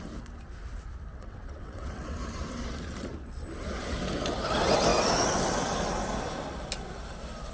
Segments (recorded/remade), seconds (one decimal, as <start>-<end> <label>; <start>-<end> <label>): 0.0-1.1 recorded; 1.1-2.1 remade; 2.1-7.5 recorded